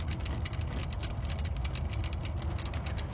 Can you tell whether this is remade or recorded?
recorded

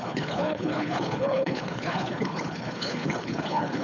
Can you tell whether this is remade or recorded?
remade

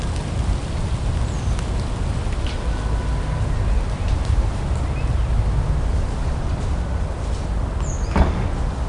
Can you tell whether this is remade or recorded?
recorded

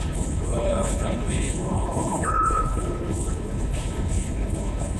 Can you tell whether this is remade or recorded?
remade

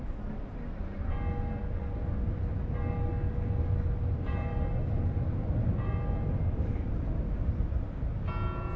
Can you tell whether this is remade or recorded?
recorded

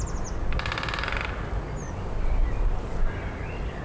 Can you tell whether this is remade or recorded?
recorded